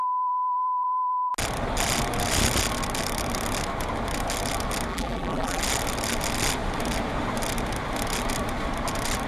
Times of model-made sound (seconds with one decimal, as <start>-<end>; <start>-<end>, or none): 0.0-1.3; 4.9-5.6